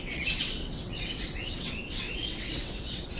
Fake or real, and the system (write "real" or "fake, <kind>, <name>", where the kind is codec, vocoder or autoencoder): fake, vocoder, WaveNeXt